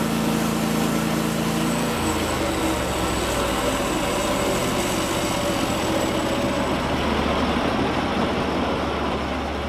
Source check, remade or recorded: recorded